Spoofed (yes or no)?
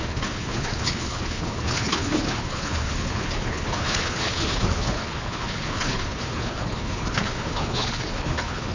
yes